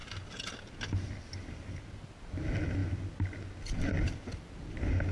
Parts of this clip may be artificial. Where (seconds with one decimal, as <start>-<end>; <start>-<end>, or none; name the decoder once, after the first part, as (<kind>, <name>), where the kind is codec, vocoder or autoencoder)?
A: none